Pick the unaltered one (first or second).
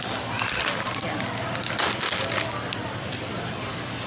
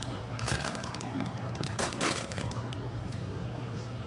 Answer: first